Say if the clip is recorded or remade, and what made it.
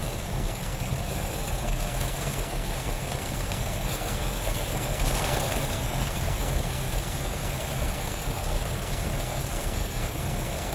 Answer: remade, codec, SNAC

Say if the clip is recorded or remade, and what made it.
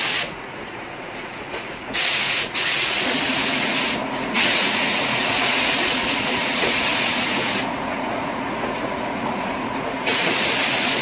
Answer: remade, vocoder, Vocos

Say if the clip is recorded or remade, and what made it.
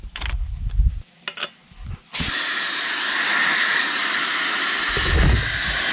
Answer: recorded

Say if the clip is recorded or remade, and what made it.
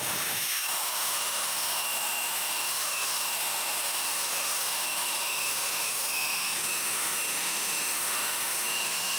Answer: remade, autoencoder, DAC-VAE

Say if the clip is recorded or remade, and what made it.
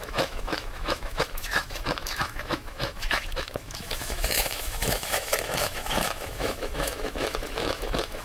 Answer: remade, autoencoder, DAC-VAE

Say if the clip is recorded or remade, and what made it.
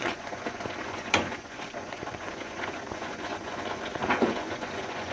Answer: remade, vocoder, Vocos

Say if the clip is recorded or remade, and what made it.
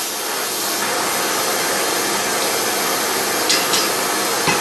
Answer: recorded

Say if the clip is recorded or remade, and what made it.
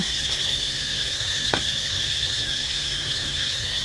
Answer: remade, codec, SNAC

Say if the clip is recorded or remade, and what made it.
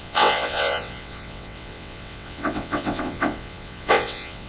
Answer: remade, vocoder, WaveNeXt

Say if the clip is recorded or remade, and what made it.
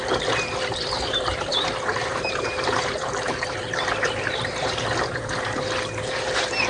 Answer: remade, vocoder, BigVGAN v2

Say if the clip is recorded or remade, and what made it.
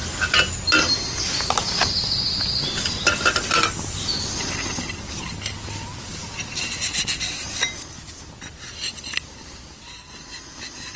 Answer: recorded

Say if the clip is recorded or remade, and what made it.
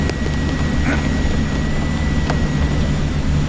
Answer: recorded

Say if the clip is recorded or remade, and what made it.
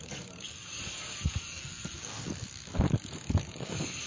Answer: remade, codec, DAC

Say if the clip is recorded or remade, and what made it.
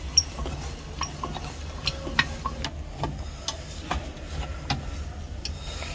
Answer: recorded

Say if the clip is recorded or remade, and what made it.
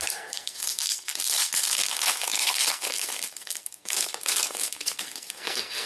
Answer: remade, codec, SNAC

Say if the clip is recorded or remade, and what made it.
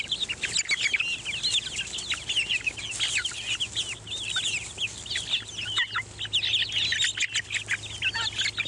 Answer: recorded